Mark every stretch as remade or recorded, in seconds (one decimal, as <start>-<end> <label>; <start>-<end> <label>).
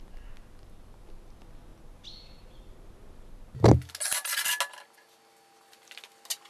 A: 0.0-6.5 recorded